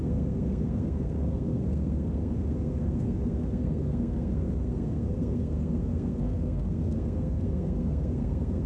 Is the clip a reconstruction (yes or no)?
yes